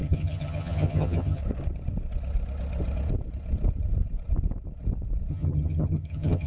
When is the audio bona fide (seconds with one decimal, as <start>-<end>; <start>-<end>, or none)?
1.4-5.3

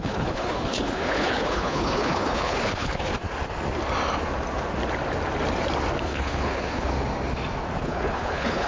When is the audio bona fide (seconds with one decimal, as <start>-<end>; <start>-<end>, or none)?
3.1-6.0; 6.9-7.8

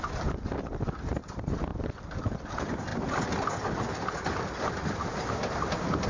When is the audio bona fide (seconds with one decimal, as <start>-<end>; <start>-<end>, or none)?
0.0-1.7; 2.2-6.1